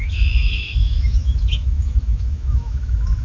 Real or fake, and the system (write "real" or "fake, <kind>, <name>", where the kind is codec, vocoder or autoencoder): fake, autoencoder, DAC-VAE